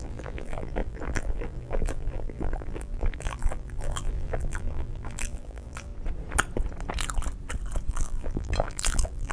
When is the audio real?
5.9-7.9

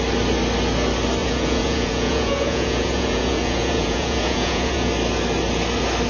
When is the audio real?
0.0-1.2; 4.9-6.1

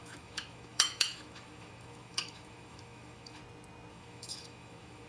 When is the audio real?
3.4-3.9

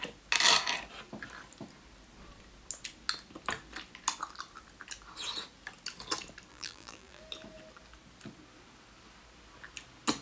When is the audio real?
0.0-6.5; 7.2-10.2